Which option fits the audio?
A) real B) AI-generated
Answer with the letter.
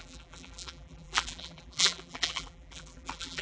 B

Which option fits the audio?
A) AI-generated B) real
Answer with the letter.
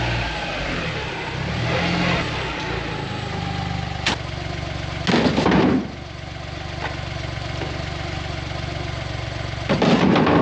B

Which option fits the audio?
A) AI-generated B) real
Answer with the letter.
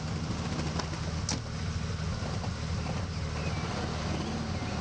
B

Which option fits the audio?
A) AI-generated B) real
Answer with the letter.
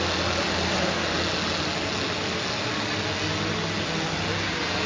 B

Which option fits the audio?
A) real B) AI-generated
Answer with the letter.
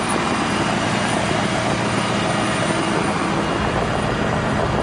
A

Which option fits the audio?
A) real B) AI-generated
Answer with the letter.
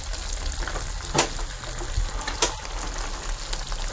A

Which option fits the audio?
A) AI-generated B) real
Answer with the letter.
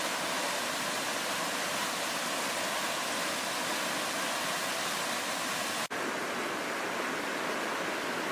B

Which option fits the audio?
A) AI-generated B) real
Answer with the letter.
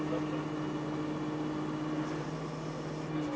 B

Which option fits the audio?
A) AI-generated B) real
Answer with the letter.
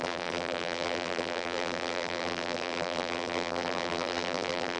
A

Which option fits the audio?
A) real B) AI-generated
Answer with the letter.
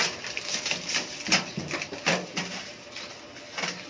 A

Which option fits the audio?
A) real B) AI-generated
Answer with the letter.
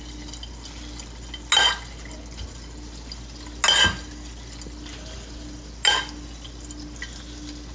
A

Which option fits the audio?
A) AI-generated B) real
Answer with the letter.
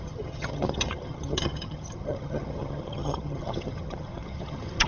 A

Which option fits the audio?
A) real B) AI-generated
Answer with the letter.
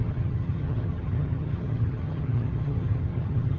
B